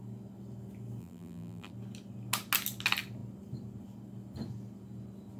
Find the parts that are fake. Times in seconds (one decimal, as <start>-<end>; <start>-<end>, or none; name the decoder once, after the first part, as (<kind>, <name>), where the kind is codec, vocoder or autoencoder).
1.0-1.7 (vocoder, BigVGAN v2)